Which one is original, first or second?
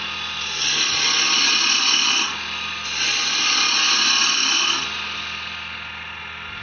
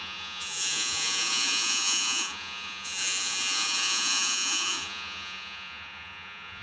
first